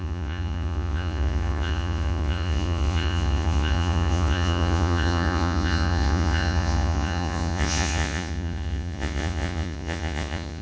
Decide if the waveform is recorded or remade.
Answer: remade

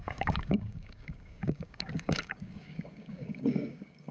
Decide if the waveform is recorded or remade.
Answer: remade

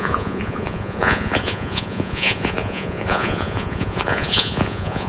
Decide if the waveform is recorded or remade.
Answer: remade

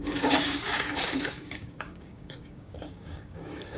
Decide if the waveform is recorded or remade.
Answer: remade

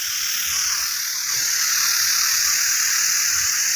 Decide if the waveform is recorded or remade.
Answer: recorded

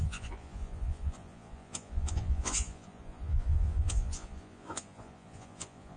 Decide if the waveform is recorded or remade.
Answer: remade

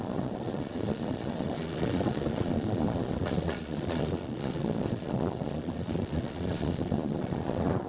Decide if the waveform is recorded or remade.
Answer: remade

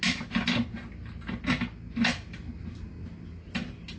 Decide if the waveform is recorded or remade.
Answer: recorded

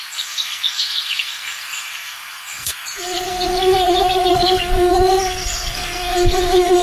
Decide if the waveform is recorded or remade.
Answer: remade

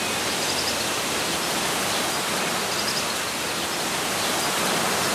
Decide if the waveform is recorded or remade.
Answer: recorded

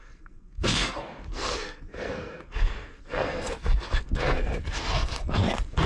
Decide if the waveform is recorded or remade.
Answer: remade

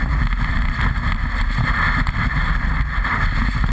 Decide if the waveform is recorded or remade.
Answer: recorded